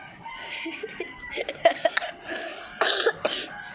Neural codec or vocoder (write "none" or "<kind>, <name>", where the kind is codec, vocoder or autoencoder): none